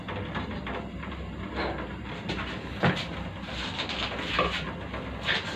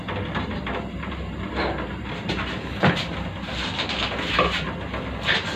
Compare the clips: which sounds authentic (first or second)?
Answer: first